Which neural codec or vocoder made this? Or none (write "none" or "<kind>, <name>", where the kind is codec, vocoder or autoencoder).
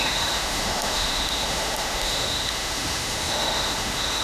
autoencoder, DAC-VAE